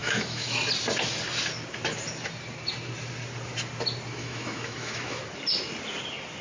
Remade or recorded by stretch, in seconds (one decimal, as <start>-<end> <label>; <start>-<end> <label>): 0.0-0.6 remade; 0.6-4.2 recorded; 4.2-5.2 remade; 5.2-6.4 recorded